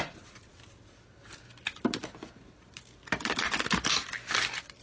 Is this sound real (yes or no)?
yes